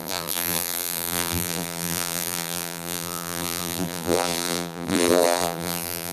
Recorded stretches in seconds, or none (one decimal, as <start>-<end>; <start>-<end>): none